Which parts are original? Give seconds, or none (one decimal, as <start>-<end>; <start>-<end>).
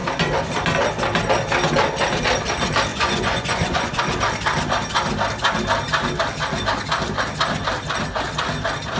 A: 0.0-2.9; 4.0-9.0